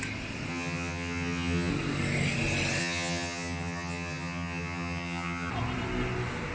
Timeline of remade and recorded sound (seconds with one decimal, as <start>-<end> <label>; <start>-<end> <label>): 0.0-0.5 recorded; 0.5-1.7 remade; 1.7-2.8 recorded; 2.8-5.5 remade; 5.5-6.5 recorded